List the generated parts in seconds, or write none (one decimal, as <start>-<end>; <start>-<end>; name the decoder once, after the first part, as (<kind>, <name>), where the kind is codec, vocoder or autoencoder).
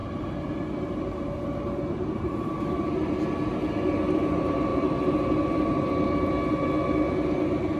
0.0-3.1 (vocoder, BigVGAN v2); 4.7-5.7